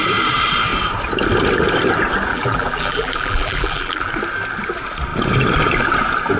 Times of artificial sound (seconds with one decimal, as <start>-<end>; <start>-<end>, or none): 2.3-4.1